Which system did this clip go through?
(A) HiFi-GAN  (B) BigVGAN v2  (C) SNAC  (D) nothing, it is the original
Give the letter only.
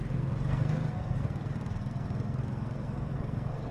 C